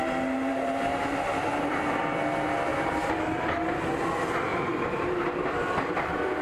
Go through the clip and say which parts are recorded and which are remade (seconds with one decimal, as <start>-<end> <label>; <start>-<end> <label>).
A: 0.0-0.5 recorded; 0.5-2.0 remade; 2.0-2.7 recorded; 2.7-3.5 remade; 3.5-4.5 recorded; 4.5-5.5 remade; 5.5-6.4 recorded